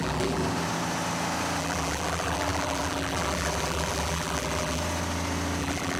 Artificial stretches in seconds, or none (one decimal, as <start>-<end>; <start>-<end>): 0.0-0.4; 1.6-4.8; 5.6-6.0